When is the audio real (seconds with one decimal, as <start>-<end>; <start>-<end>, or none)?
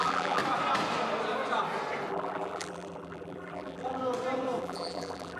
0.4-2.1; 4.0-4.6